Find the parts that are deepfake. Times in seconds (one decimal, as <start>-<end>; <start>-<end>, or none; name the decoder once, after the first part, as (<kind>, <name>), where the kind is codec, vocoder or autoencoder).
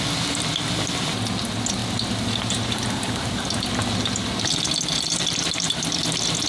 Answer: 1.8-5.7 (vocoder, BigVGAN v2)